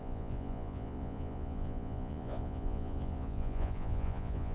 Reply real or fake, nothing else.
fake